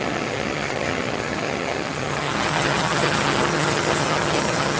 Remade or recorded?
remade